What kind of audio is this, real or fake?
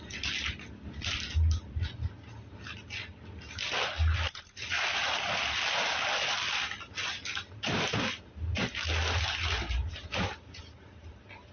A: real